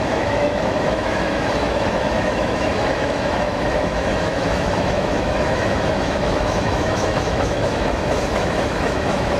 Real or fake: fake